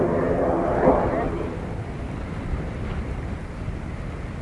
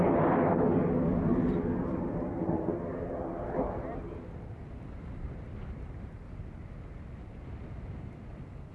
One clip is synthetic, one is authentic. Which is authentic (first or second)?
second